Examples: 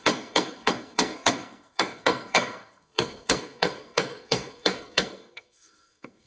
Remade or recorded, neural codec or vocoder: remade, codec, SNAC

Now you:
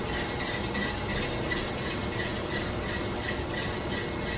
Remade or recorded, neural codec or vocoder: recorded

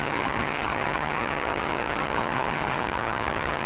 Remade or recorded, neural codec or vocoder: remade, vocoder, HiFi-GAN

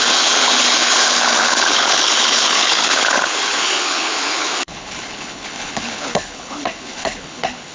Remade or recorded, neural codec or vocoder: remade, codec, HILCodec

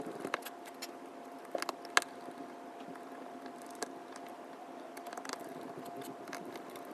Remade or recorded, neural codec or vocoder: recorded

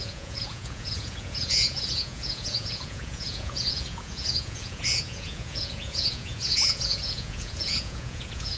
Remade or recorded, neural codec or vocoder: remade, vocoder, Vocos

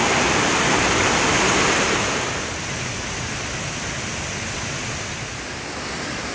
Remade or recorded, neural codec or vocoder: recorded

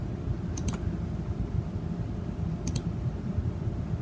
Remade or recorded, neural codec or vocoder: recorded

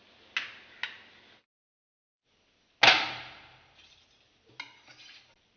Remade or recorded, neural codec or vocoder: recorded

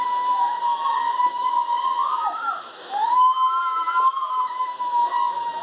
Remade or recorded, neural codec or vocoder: remade, autoencoder, DAC-VAE